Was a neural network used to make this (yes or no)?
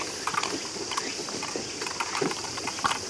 no